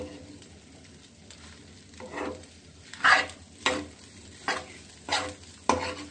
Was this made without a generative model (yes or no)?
yes